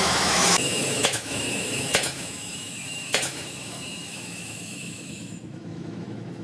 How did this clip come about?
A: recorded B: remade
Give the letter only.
B